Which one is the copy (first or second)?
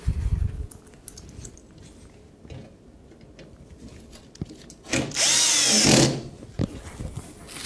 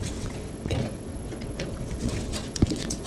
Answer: second